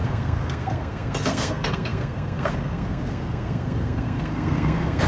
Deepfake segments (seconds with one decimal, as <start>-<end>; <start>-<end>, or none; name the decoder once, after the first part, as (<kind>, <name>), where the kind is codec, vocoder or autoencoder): 0.0-5.1 (codec, SNAC)